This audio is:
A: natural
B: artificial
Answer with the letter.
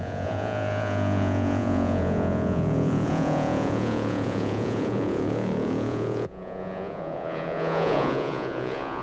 B